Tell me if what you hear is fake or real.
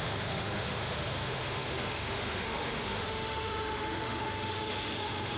fake